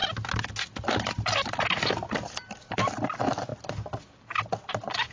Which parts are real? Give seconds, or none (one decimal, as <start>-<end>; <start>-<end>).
0.0-5.1